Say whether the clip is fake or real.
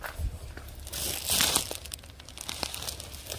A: real